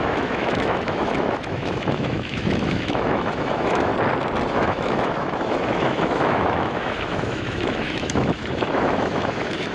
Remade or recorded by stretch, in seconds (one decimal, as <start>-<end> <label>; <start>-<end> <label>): 0.0-3.9 remade; 3.9-4.5 recorded; 4.5-9.7 remade